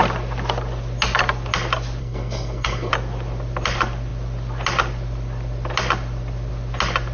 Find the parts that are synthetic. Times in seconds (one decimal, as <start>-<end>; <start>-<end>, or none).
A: 2.0-2.9